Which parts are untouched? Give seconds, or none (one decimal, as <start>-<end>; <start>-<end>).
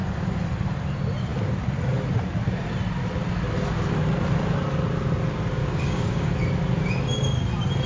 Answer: 0.0-5.6; 6.3-7.9